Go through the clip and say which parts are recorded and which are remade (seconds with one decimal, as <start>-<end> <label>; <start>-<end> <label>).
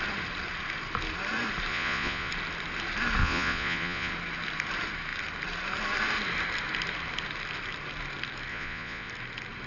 0.0-1.7 recorded; 1.7-2.3 remade; 2.3-3.2 recorded; 3.2-4.1 remade; 4.1-8.5 recorded; 8.5-9.1 remade; 9.1-9.7 recorded